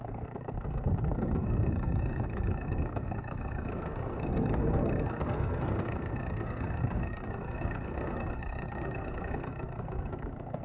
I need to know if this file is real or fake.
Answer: fake